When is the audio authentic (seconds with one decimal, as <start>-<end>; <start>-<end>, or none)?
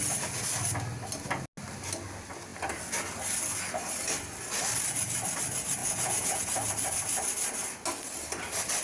0.0-5.8; 6.4-8.8